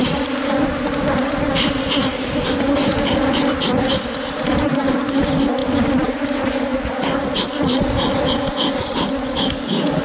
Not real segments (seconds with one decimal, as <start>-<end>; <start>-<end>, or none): 0.0-1.5